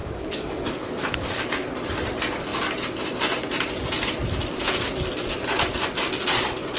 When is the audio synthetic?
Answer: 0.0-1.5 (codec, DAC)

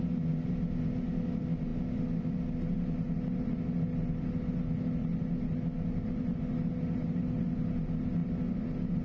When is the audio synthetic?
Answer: none

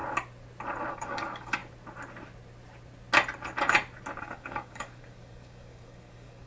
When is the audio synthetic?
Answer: 0.9-1.6 (codec, DAC); 4.2-6.5

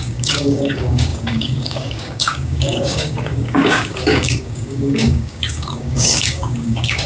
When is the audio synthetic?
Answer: 0.0-7.1 (codec, DAC)

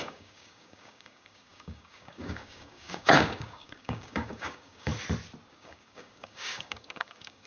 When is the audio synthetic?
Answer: 0.0-4.9 (codec, DAC); 5.5-7.5